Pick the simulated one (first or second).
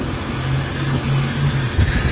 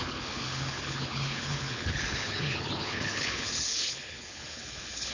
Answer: second